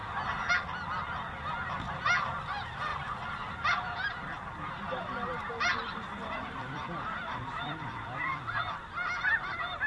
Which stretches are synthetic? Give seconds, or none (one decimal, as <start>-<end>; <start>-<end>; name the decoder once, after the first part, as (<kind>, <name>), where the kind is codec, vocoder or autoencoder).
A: 0.0-0.5 (vocoder, BigVGAN v2); 6.2-8.7